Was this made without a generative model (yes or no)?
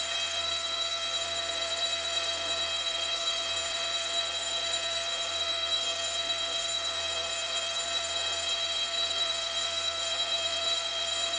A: no